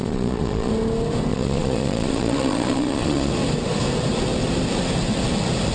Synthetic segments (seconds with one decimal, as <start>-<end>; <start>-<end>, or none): 0.0-0.7; 1.3-3.3